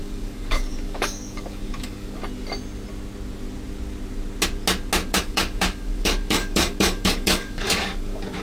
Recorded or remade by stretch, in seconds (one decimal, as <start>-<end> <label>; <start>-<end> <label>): 0.0-2.2 remade; 2.2-5.1 recorded; 5.1-8.4 remade